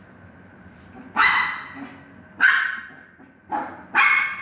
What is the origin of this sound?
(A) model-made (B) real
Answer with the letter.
B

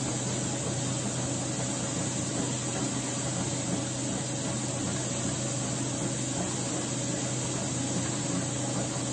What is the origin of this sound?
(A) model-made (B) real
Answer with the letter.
B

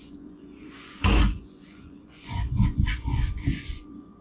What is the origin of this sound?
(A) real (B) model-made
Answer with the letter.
B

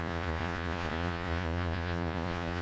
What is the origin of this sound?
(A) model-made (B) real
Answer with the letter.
A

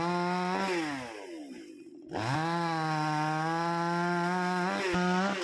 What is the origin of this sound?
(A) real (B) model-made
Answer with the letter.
A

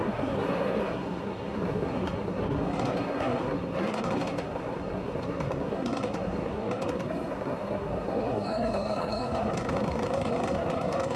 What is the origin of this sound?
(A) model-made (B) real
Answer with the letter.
A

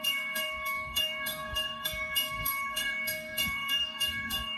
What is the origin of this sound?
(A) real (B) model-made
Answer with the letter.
B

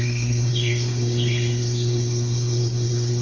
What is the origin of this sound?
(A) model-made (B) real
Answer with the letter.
A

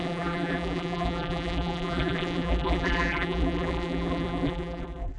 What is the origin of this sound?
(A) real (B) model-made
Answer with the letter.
B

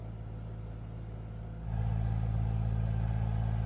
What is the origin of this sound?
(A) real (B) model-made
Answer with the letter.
A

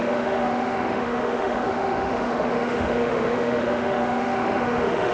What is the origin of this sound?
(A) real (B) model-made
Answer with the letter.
B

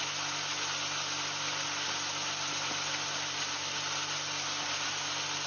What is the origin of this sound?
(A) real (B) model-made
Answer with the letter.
A